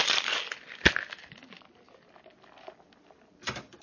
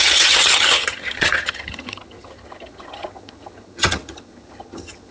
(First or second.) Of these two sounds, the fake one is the second